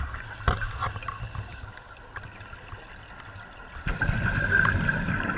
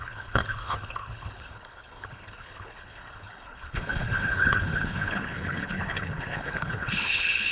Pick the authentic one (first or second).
first